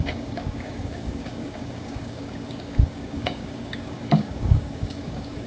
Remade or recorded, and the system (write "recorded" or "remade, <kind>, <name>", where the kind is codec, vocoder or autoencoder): remade, codec, DAC